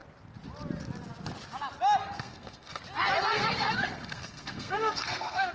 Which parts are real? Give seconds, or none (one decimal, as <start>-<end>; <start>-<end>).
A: 0.0-2.0; 2.8-3.3